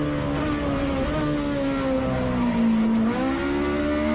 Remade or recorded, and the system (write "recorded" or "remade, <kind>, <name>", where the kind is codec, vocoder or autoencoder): recorded